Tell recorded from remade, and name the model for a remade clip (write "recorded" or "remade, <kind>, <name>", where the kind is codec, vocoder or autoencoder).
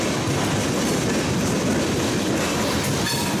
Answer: recorded